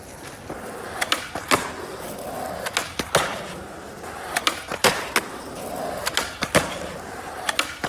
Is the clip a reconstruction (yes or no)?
no